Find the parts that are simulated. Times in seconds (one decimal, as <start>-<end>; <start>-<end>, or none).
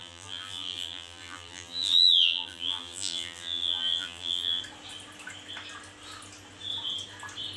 0.0-4.6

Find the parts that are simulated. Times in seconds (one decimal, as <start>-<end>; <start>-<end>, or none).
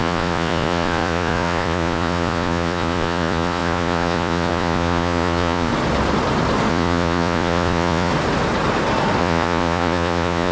0.0-5.7; 6.7-8.1; 9.2-10.5